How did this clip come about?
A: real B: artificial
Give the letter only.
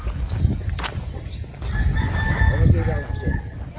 A